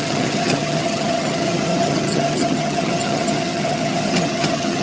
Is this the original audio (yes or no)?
no